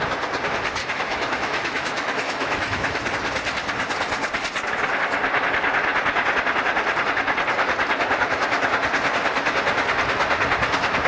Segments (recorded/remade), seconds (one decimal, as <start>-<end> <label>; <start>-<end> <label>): 0.0-0.8 recorded; 0.8-3.1 remade; 3.1-11.1 recorded